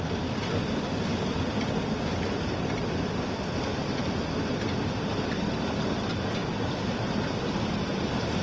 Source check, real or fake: real